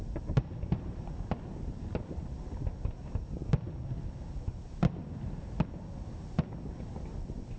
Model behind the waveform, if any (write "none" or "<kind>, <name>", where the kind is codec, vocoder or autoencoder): none